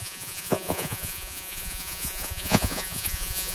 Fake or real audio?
fake